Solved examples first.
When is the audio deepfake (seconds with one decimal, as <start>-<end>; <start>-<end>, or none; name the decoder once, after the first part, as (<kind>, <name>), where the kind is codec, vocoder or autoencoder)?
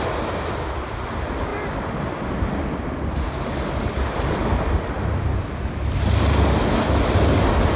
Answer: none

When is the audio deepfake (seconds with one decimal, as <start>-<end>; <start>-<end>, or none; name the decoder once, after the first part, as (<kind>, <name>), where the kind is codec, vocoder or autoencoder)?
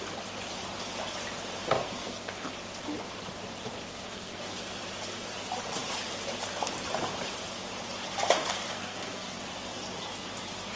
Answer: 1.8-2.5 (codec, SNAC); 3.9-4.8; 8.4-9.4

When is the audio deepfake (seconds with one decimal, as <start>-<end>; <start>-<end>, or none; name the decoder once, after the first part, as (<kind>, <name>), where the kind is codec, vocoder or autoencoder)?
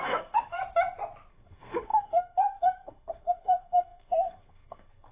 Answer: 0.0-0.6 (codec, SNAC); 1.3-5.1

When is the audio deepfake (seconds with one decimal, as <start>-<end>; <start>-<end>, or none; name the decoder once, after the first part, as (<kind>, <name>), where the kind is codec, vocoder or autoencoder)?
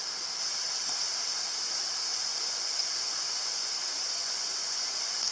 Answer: 2.1-5.3 (vocoder, Vocos)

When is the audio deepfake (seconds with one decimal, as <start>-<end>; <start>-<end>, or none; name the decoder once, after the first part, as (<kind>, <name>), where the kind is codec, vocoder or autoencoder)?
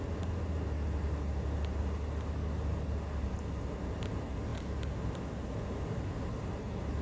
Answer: none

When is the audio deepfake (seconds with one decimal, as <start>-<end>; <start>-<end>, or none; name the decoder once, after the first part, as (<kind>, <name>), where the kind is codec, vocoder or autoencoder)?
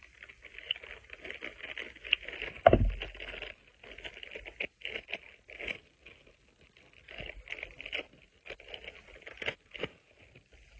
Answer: none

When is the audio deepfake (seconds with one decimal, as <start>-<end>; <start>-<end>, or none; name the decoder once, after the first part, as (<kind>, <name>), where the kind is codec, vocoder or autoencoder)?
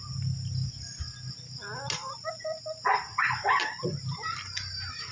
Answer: none